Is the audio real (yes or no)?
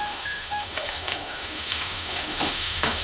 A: no